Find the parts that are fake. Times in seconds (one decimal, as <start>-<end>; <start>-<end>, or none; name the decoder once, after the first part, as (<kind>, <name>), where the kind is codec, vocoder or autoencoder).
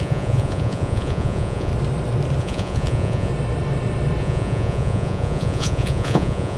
0.0-1.7 (vocoder, Vocos); 2.4-3.3; 4.2-6.6